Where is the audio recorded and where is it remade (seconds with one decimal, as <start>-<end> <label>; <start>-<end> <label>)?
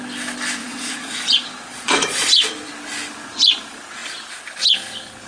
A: 0.0-0.6 recorded; 0.6-2.7 remade; 2.7-5.3 recorded